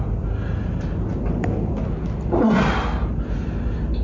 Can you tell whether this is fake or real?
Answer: real